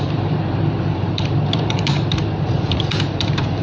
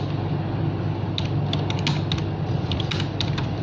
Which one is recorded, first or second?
second